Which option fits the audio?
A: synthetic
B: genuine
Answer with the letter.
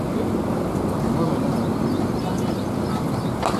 B